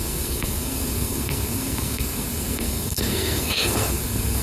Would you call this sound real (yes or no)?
no